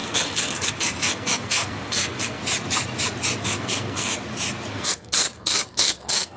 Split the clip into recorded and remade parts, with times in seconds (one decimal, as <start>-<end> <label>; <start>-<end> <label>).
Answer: 0.0-2.4 remade; 2.4-3.4 recorded; 3.4-4.1 remade; 4.1-4.7 recorded; 4.7-6.4 remade